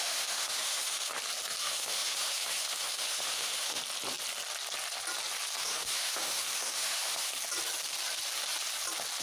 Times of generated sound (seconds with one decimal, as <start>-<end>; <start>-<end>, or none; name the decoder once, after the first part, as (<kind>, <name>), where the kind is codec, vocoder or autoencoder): 0.0-1.1 (autoencoder, DAC-VAE); 1.6-3.8; 5.6-7.3